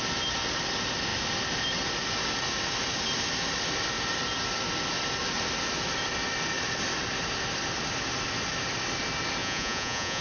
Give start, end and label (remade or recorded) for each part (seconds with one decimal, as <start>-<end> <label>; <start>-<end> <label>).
0.0-9.4 recorded; 9.4-10.2 remade